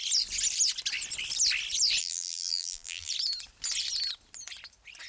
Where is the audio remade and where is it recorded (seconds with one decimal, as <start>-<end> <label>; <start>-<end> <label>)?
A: 0.0-2.0 recorded; 2.0-3.1 remade; 3.1-5.1 recorded